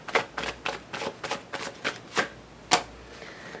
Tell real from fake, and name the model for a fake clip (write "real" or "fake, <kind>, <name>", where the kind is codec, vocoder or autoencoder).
real